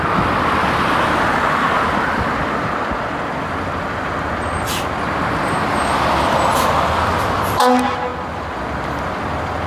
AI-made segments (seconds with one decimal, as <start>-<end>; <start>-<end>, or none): none

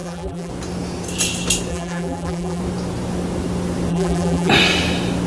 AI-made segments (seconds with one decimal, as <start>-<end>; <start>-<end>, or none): 0.0-0.5; 1.7-2.6; 3.9-4.5